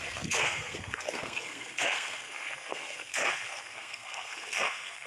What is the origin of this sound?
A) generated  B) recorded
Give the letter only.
A